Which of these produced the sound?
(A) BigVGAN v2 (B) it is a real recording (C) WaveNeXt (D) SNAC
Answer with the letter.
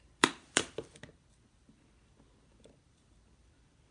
A